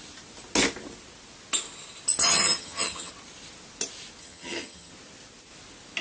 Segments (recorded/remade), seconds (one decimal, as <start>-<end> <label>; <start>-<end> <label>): 0.0-2.2 recorded; 2.2-3.1 remade; 3.1-4.2 recorded; 4.2-4.9 remade; 4.9-6.0 recorded